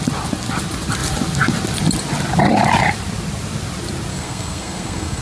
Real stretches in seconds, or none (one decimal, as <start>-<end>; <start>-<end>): 0.0-4.1